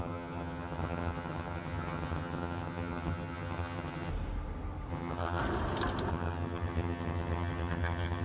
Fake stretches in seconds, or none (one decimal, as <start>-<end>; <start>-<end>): 0.0-4.1; 4.9-5.4; 6.1-8.2